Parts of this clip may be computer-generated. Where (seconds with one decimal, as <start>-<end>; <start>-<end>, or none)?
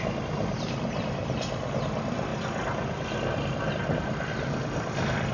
none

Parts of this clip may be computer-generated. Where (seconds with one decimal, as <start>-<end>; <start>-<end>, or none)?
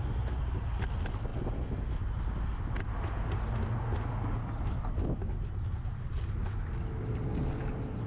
none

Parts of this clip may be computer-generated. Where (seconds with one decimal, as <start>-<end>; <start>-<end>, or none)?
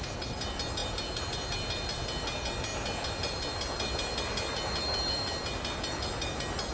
none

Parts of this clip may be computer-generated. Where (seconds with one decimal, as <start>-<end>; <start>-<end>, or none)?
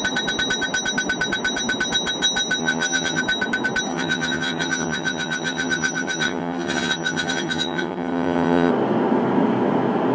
2.6-3.2; 3.9-8.7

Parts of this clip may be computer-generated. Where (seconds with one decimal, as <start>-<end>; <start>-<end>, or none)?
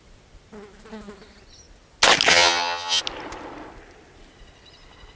2.3-3.0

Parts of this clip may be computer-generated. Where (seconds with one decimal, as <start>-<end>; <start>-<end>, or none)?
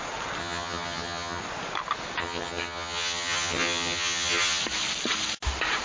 0.4-1.4; 2.2-4.6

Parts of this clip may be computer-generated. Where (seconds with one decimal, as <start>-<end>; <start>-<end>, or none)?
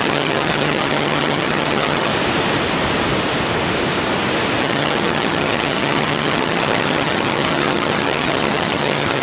0.0-2.1; 4.6-9.2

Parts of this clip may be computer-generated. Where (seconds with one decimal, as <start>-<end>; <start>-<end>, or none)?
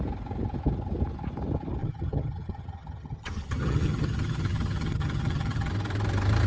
1.8-5.7